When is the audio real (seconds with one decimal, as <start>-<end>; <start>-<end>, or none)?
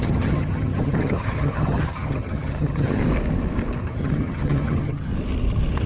3.0-3.8; 5.1-5.9